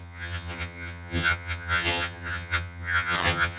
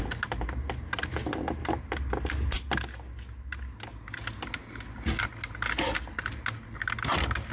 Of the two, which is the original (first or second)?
second